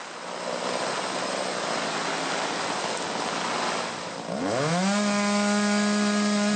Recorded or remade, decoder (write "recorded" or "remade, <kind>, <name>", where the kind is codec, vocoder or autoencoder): recorded